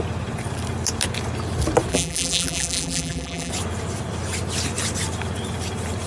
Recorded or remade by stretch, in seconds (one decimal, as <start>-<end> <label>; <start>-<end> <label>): 0.0-1.9 recorded; 1.9-3.5 remade; 3.5-6.1 recorded

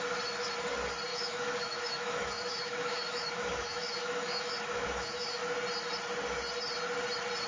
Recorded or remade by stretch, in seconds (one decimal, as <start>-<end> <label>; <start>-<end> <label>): 0.0-1.1 recorded; 1.1-5.4 remade; 5.4-7.5 recorded

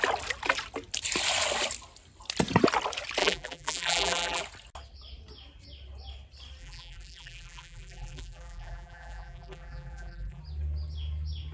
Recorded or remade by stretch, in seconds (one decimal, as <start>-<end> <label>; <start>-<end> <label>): 0.0-3.2 recorded; 3.2-4.4 remade; 4.4-6.6 recorded; 6.6-10.4 remade; 10.4-11.5 recorded

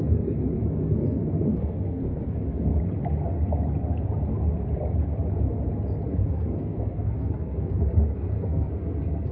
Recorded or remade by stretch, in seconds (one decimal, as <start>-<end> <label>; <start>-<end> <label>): 0.0-2.7 remade; 2.7-6.1 recorded; 6.1-9.3 remade

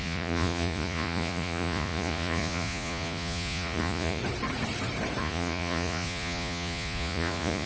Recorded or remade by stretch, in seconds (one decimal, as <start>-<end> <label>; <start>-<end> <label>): 0.0-4.2 remade; 4.2-5.2 recorded; 5.2-7.7 remade